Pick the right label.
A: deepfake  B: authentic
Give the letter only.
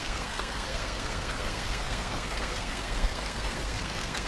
A